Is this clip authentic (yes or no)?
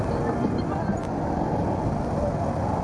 yes